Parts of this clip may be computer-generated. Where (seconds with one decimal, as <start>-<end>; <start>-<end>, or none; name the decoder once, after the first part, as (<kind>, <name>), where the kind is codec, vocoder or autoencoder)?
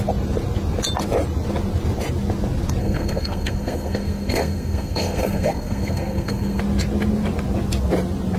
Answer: 2.8-6.6 (codec, SNAC)